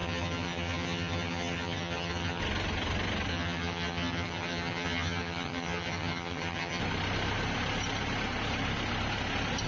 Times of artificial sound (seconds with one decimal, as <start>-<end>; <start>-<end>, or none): 0.0-2.4; 3.3-6.8